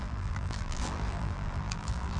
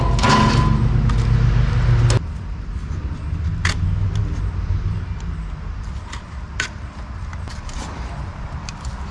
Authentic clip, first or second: second